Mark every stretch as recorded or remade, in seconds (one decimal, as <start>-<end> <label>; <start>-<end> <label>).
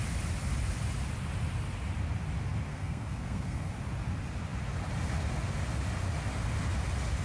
0.0-2.7 recorded; 2.7-3.7 remade; 3.7-7.2 recorded